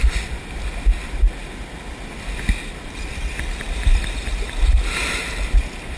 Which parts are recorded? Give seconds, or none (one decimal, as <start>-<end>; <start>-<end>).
0.0-6.0